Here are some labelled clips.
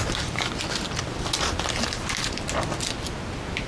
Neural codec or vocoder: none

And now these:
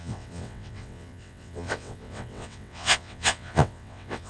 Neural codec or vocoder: vocoder, WaveNeXt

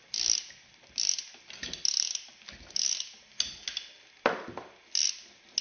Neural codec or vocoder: none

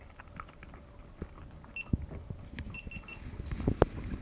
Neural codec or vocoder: none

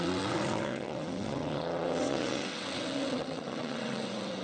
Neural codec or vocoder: vocoder, WaveNeXt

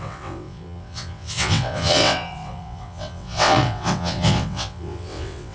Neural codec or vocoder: vocoder, WaveNeXt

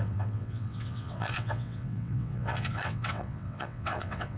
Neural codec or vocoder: vocoder, WaveNeXt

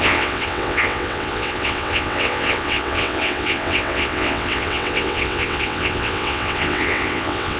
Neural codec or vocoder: vocoder, WaveNeXt